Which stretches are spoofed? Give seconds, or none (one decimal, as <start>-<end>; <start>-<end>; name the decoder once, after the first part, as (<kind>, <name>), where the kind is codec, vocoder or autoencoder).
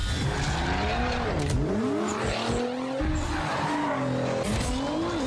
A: none